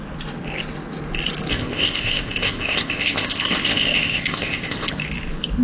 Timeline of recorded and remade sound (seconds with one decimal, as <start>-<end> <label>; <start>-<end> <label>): 0.0-1.5 recorded; 1.5-4.9 remade; 4.9-5.6 recorded